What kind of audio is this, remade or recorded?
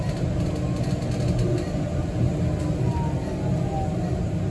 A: recorded